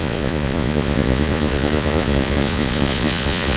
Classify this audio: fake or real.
fake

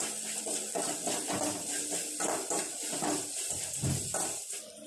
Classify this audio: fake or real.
fake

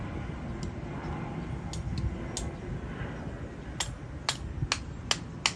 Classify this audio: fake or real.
real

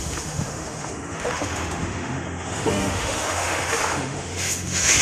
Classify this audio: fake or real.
fake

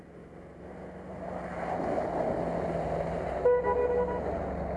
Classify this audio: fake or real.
real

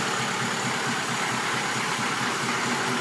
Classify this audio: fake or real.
real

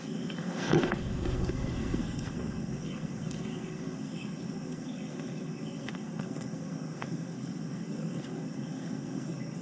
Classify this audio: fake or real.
fake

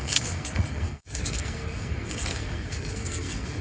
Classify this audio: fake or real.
fake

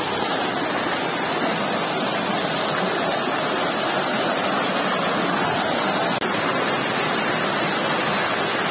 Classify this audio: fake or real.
real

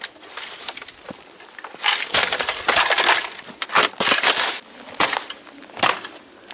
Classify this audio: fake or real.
real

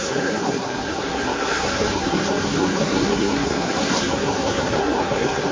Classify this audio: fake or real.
fake